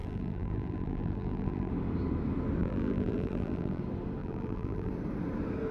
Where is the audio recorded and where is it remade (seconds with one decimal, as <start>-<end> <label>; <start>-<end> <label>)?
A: 0.0-1.7 remade; 1.7-2.6 recorded; 2.6-3.8 remade; 3.8-4.2 recorded; 4.2-4.9 remade; 4.9-5.7 recorded